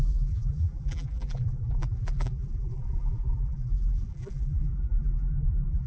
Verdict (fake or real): fake